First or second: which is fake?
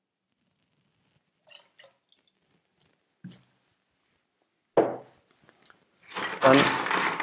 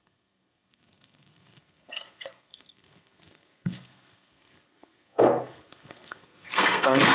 second